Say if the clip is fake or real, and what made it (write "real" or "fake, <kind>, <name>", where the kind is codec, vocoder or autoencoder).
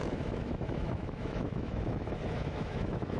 fake, autoencoder, DAC-VAE